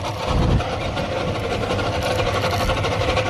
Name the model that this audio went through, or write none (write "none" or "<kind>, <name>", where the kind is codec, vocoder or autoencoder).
none